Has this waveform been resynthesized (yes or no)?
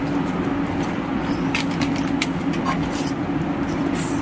no